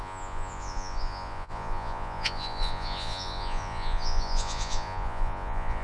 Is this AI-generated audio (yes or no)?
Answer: yes